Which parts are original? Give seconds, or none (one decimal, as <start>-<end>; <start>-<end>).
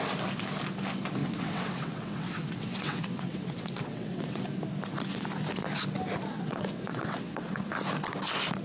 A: 0.0-1.2; 4.4-6.3; 7.7-8.6